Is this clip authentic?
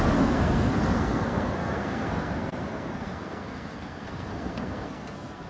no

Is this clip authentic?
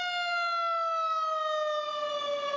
yes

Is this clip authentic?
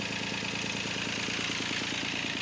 yes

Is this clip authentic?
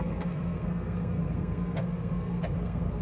no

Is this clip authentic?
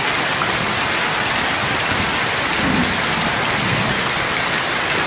yes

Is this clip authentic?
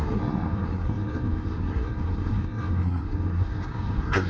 no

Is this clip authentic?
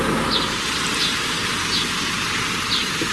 yes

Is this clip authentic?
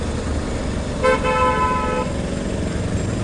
yes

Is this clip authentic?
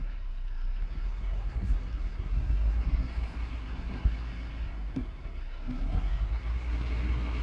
no